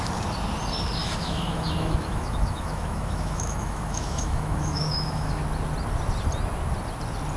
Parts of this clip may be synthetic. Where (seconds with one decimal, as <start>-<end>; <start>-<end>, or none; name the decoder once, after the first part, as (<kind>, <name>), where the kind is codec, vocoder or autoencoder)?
1.0-5.4 (autoencoder, DAC-VAE)

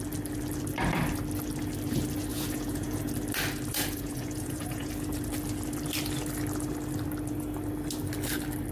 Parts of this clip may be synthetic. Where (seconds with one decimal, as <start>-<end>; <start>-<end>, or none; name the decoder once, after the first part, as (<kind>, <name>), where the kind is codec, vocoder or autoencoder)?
2.3-3.1 (vocoder, Vocos); 3.7-4.9